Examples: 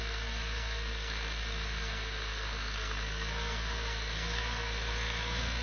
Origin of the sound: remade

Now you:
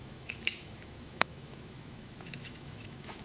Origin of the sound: remade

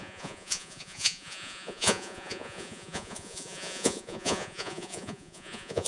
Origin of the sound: remade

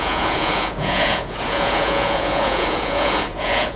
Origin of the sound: remade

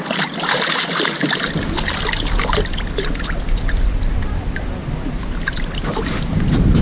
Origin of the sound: recorded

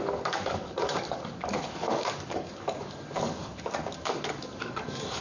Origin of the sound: remade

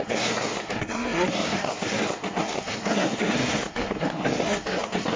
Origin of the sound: remade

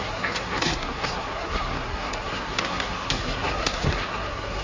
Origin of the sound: remade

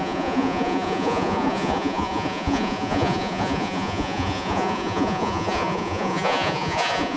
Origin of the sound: remade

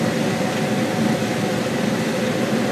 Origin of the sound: recorded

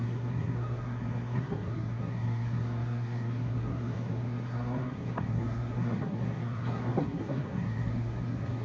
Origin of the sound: remade